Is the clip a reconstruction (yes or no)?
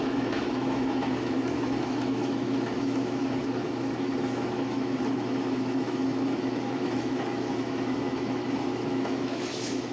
yes